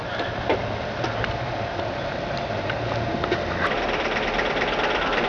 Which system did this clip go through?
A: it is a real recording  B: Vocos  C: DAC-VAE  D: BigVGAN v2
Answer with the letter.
A